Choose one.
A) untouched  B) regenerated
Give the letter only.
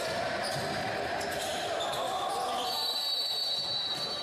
A